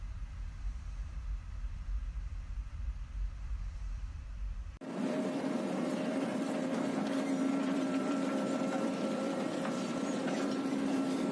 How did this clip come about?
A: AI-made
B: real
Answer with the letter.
A